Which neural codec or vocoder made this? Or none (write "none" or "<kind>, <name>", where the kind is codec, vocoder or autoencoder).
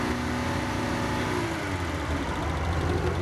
none